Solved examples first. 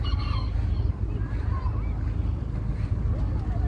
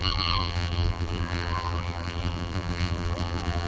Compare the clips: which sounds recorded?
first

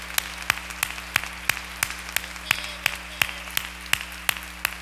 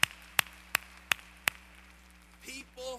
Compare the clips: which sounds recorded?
first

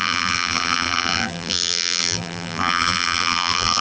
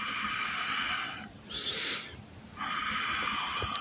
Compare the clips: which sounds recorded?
second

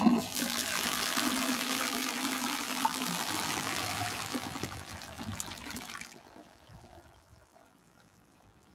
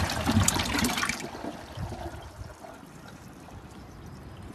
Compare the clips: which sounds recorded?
second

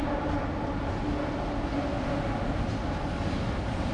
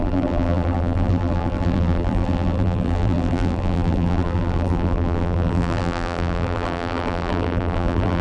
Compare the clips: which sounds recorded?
first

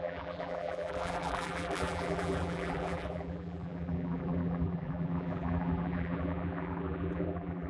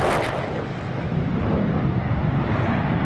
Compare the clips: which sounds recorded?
second